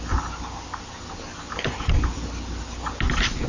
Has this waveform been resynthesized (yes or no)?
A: no